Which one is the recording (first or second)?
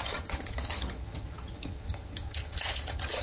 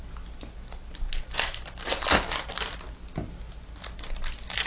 second